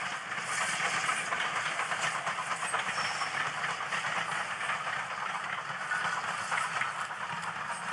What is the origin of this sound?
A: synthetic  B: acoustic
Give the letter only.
B